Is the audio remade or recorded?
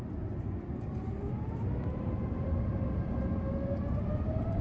recorded